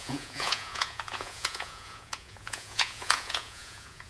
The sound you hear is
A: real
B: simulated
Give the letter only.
B